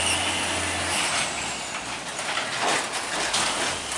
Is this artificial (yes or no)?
no